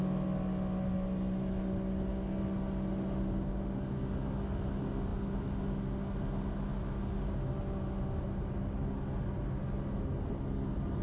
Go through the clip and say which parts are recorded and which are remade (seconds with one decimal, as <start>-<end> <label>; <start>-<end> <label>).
0.0-11.0 recorded